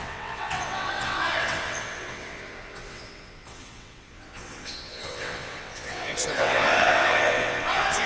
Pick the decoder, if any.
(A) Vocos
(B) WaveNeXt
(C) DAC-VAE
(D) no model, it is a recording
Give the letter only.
B